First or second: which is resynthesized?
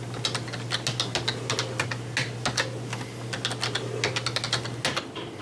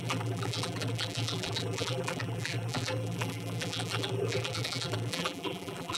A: second